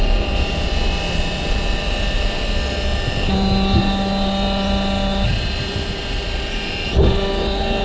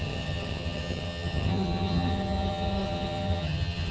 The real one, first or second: first